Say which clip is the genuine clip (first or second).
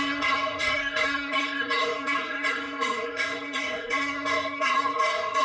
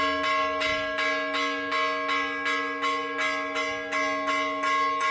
second